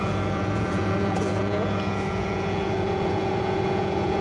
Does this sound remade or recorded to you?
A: remade